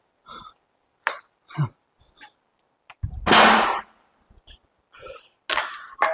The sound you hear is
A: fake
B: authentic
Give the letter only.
B